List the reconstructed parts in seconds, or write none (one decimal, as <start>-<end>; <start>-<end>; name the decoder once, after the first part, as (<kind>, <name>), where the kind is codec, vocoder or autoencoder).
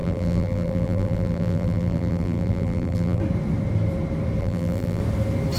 0.0-3.2 (vocoder, BigVGAN v2); 4.4-5.0